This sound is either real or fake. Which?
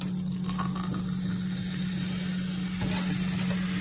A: real